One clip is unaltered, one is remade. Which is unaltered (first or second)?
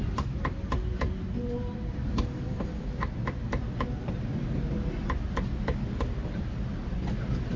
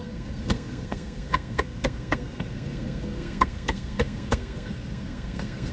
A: first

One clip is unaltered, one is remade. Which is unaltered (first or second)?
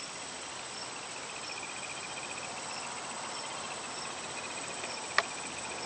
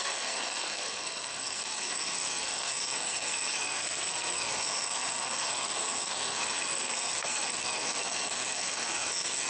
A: first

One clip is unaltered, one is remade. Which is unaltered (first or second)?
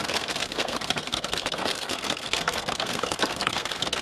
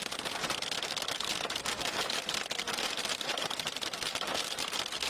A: second